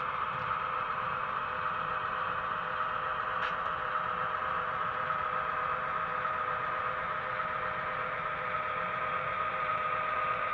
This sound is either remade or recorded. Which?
remade